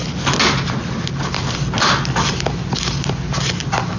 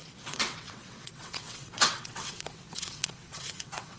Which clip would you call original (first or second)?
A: first